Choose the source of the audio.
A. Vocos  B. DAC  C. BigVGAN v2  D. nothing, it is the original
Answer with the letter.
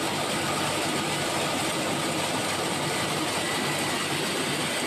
D